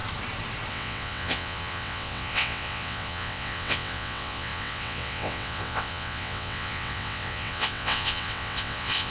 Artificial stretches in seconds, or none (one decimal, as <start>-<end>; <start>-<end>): 0.7-9.1

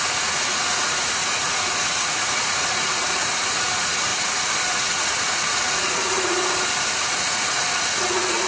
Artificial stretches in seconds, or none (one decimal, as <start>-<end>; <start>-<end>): 0.0-4.1; 4.7-6.4; 7.0-8.5

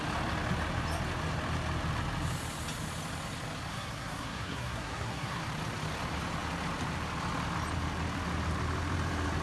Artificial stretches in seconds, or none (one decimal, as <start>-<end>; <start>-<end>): 3.7-5.4

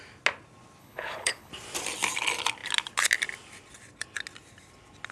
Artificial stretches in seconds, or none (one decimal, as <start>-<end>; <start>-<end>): 0.8-1.5

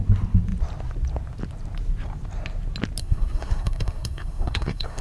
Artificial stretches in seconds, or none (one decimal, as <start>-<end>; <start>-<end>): 3.0-5.0

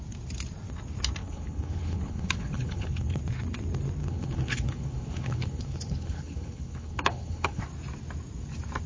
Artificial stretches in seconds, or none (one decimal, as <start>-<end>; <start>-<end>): 1.2-3.2; 4.0-7.6

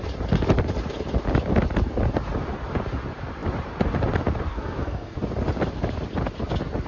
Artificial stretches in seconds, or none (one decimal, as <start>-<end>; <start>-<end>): 4.5-5.2

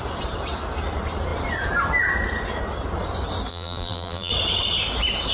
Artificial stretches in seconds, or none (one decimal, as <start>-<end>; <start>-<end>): 3.5-4.3